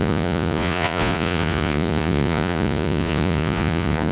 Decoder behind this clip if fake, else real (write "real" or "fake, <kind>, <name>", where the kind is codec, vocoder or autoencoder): fake, vocoder, Vocos